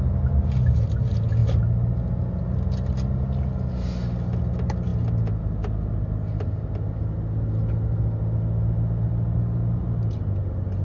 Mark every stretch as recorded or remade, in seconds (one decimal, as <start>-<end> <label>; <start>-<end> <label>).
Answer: 0.0-10.8 recorded